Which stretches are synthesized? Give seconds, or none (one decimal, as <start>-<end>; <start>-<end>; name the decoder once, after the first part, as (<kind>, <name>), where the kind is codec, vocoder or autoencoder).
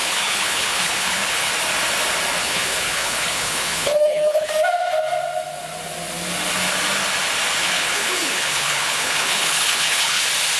0.0-1.5 (codec, HILCodec); 2.4-4.5; 7.6-10.2